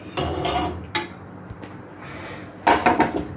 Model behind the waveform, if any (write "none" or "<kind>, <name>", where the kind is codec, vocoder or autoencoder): none